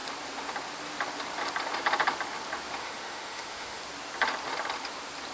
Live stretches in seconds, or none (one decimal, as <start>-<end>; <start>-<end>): 0.0-2.8; 3.8-5.3